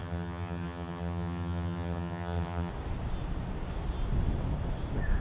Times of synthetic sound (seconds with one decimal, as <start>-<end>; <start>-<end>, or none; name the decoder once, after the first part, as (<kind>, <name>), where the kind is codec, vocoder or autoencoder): 0.0-2.7 (vocoder, HiFi-GAN)